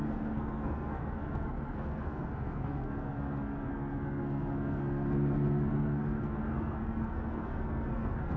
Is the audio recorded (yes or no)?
no